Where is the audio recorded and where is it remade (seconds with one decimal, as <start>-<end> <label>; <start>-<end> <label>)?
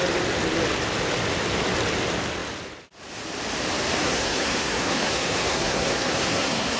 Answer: 0.0-4.0 recorded; 4.0-6.8 remade